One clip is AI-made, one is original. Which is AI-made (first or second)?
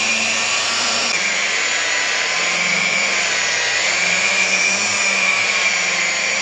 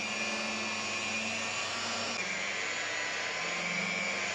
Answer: first